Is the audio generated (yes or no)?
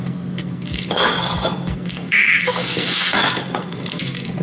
yes